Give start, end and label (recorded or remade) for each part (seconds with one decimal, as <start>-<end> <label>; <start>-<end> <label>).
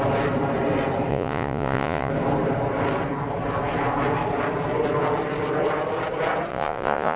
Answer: 0.0-1.1 recorded; 1.1-2.1 remade; 2.1-6.5 recorded; 6.5-7.2 remade